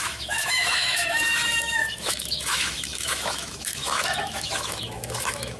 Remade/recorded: remade